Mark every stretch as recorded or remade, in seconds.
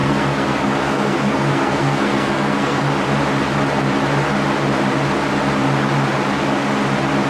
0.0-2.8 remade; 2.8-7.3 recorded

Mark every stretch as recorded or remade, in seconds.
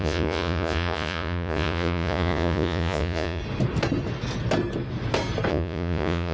0.0-3.4 remade; 3.4-5.5 recorded; 5.5-6.3 remade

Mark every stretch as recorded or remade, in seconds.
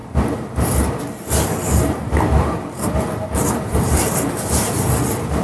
0.0-1.0 remade; 1.0-1.6 recorded; 1.6-4.8 remade; 4.8-5.4 recorded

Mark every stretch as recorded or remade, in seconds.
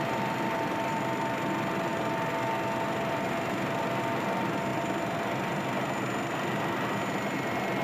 0.0-7.8 recorded